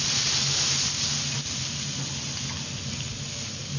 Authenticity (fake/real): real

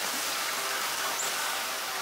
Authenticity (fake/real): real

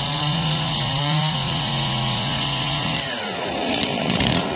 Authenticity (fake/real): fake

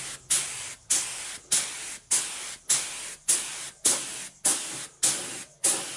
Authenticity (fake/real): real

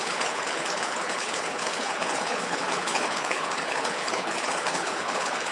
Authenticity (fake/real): fake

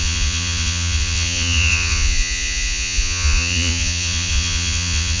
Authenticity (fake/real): fake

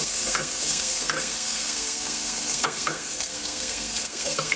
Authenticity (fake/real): fake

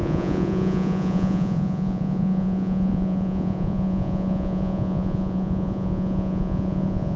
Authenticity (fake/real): fake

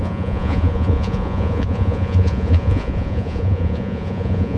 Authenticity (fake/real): fake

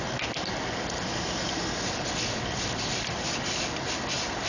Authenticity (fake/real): real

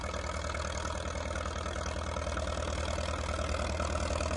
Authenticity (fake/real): real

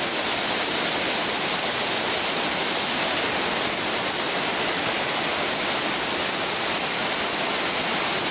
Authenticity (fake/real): real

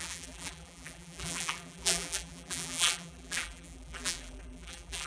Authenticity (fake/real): fake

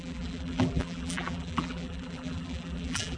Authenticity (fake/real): fake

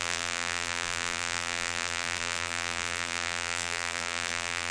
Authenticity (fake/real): fake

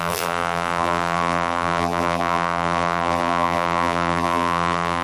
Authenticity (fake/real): fake